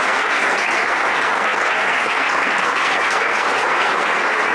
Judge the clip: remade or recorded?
remade